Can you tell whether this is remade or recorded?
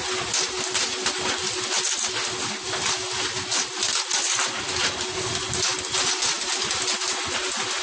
recorded